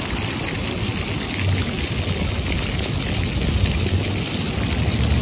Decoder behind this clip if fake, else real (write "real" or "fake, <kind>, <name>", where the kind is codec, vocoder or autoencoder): real